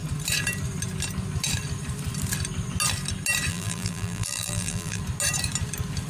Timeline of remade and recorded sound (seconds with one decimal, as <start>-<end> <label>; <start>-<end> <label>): 0.0-3.5 recorded; 3.5-5.0 remade; 5.0-6.1 recorded

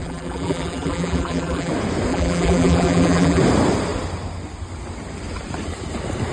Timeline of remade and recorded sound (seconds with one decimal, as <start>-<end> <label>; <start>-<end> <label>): 0.0-1.7 remade; 1.7-2.1 recorded; 2.1-3.4 remade; 3.4-6.3 recorded

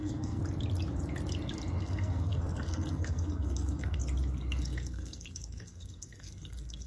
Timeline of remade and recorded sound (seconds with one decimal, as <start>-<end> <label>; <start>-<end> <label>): 0.0-0.4 remade; 0.4-1.8 recorded; 1.8-4.0 remade; 4.0-4.6 recorded; 4.6-6.9 remade

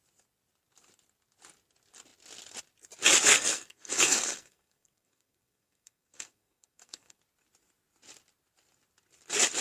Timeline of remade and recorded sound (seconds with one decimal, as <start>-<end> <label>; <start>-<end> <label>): 0.0-3.3 recorded; 3.3-7.2 remade; 7.2-9.6 recorded

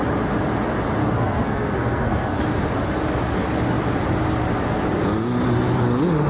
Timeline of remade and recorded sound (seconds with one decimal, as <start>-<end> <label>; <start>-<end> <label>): 0.0-1.0 recorded; 1.0-2.4 remade; 2.4-6.3 recorded

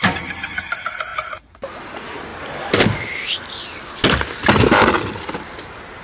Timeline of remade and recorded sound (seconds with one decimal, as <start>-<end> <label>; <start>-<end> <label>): 0.0-6.0 recorded

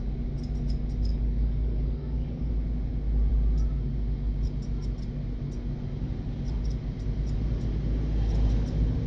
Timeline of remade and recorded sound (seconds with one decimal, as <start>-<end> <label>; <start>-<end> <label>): 0.0-1.1 recorded; 1.1-2.5 remade; 2.5-9.1 recorded